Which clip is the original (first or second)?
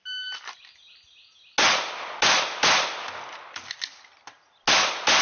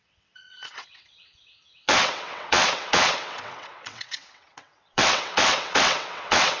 first